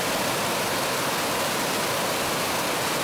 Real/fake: real